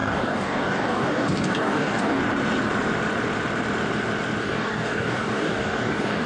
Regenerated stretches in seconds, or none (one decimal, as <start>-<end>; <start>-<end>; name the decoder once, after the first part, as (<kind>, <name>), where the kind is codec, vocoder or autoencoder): 0.0-2.2 (codec, DAC); 4.4-6.3